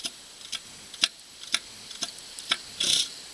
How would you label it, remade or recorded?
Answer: remade